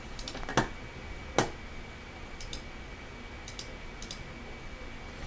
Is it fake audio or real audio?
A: real